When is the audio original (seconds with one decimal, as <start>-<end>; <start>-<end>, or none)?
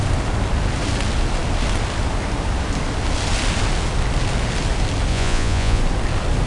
0.0-5.1; 5.8-6.5